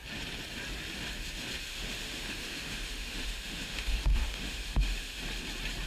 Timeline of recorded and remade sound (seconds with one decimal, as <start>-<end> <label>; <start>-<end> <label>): 0.0-1.7 recorded; 1.7-5.2 remade; 5.2-5.9 recorded